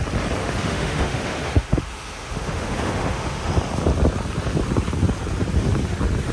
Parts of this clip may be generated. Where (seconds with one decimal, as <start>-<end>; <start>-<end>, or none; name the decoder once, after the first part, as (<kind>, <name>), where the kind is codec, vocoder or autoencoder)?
0.4-3.5 (autoencoder, DAC-VAE)